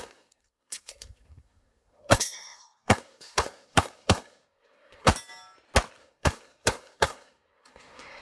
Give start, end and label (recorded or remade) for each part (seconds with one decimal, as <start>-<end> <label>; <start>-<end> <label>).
0.0-5.1 remade; 5.1-6.0 recorded; 6.0-8.2 remade